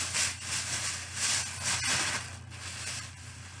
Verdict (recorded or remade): recorded